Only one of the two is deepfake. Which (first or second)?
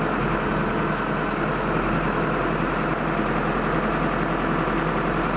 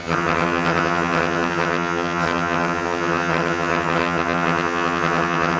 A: second